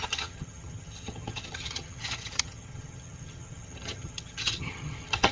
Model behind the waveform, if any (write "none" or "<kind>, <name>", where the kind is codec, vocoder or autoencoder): vocoder, HiFi-GAN